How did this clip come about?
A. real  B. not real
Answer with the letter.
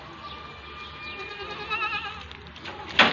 A